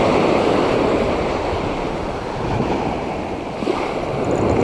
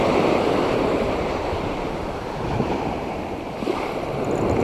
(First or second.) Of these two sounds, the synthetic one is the second